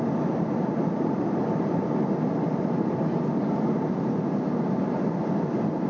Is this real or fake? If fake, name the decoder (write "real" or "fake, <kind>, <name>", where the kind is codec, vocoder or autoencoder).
fake, vocoder, BigVGAN v2